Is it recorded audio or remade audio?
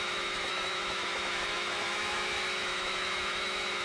remade